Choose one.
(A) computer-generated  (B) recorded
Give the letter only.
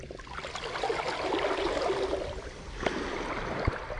B